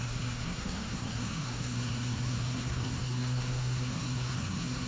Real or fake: fake